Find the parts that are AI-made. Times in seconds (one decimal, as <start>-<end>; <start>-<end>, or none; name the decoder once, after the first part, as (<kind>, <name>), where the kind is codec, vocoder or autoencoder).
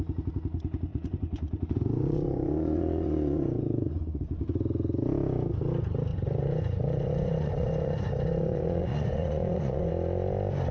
0.9-4.2 (vocoder, Vocos); 6.1-9.9